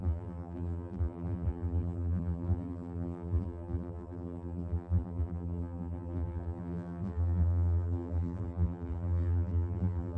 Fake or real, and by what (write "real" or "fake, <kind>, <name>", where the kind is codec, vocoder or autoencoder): fake, vocoder, BigVGAN v2